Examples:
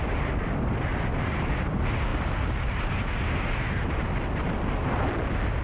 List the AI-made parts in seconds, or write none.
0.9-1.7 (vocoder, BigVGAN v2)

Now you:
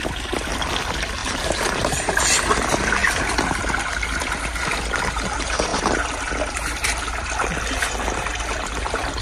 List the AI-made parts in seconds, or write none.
1.2-2.2 (vocoder, BigVGAN v2); 5.7-6.3

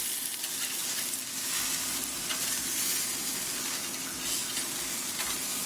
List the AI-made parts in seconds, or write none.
none

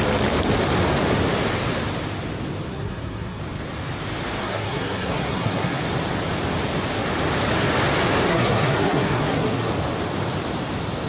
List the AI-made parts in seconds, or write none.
2.7-3.4 (codec, SNAC); 4.4-5.8; 8.3-9.7

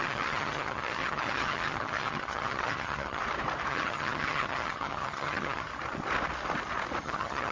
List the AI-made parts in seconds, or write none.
0.0-3.2 (vocoder, HiFi-GAN); 3.7-5.7; 7.0-7.5

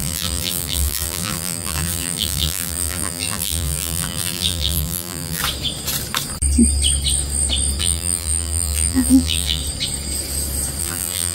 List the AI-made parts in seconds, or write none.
0.0-5.4 (vocoder, BigVGAN v2); 7.8-9.6; 10.8-11.3

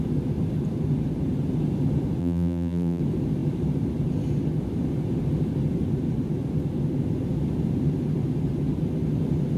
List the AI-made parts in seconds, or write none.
2.2-3.0 (vocoder, BigVGAN v2)

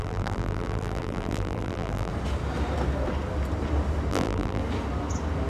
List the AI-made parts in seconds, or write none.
0.0-2.1 (vocoder, BigVGAN v2); 4.1-4.6